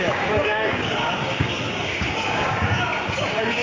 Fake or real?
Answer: fake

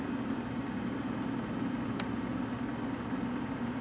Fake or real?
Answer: real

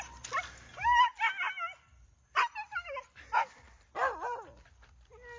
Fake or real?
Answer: real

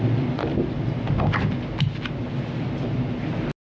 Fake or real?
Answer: real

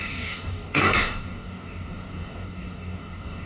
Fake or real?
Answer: fake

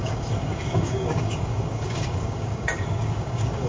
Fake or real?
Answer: fake